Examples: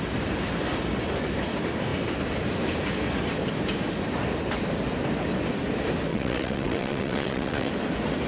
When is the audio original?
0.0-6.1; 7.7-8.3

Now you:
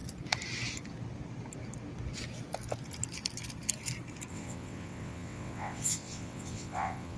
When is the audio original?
0.0-4.3